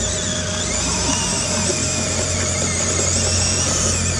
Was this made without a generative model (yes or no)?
yes